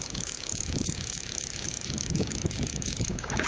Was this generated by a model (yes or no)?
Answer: yes